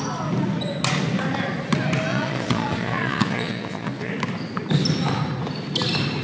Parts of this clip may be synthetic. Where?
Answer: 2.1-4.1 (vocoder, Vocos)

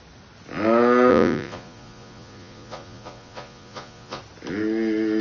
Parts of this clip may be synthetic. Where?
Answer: 1.1-4.2 (vocoder, Vocos)